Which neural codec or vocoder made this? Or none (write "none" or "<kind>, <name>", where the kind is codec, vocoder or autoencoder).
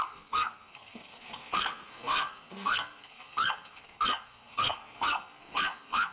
codec, SNAC